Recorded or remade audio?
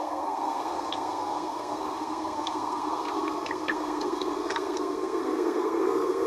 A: remade